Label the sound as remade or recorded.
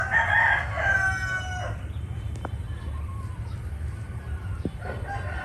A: recorded